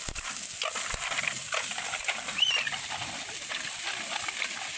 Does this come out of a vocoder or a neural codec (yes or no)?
no